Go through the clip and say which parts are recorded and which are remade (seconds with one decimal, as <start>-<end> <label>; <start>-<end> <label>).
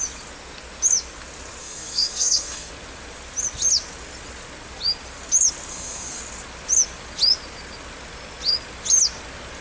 0.0-1.6 recorded; 1.6-2.7 remade; 2.7-5.7 recorded; 5.7-6.2 remade; 6.2-9.6 recorded